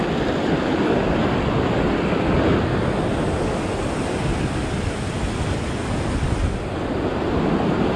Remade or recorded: recorded